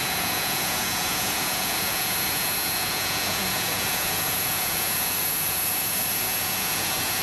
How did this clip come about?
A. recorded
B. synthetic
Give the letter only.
B